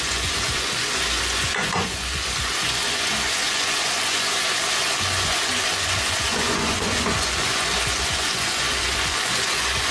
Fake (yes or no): yes